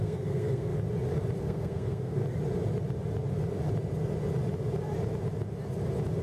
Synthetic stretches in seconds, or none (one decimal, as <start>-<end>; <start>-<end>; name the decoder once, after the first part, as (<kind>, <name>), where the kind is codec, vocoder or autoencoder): 0.0-0.7 (codec, SNAC); 1.4-2.2